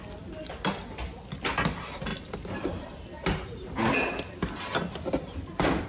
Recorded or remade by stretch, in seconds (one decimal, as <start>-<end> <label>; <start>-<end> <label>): 0.0-5.9 recorded